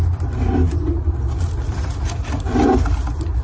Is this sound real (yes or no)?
yes